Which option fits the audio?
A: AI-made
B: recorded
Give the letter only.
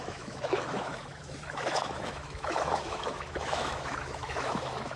A